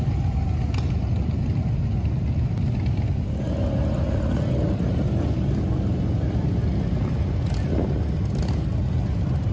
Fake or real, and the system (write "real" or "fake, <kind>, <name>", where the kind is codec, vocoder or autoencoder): real